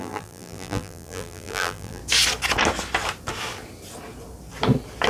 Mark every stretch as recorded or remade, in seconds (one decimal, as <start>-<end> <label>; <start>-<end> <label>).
0.0-2.0 remade; 2.0-5.1 recorded